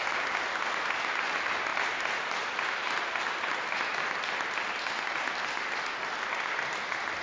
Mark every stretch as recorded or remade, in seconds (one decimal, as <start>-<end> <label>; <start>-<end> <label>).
0.0-7.2 recorded